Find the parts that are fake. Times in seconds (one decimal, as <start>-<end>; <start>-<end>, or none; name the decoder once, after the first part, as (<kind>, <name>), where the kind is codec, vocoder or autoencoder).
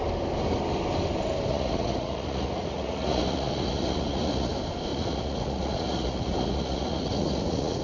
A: 1.5-4.5 (vocoder, Vocos); 4.9-7.8